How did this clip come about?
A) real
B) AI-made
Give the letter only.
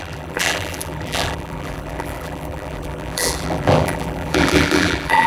B